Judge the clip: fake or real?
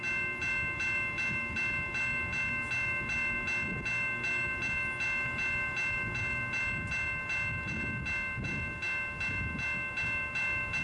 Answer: real